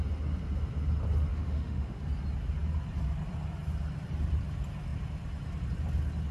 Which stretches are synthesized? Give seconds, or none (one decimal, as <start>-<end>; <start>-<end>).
1.3-2.0